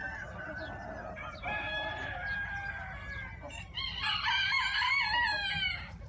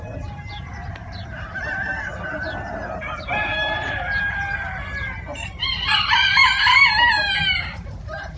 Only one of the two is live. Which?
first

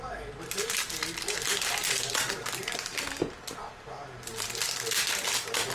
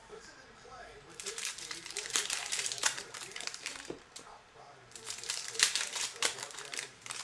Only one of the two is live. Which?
first